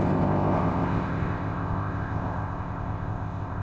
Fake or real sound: fake